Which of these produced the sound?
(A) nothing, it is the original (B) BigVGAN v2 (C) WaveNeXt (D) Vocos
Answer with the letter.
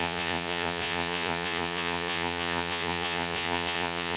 D